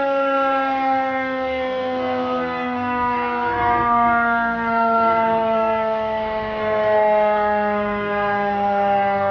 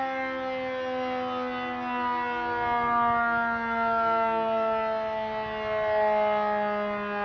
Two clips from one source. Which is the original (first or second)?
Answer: second